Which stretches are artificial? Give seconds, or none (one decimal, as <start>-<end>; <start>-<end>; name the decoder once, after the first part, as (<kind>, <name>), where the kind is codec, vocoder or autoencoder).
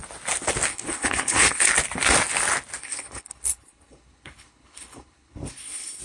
0.7-1.7 (codec, HILCodec); 2.8-6.0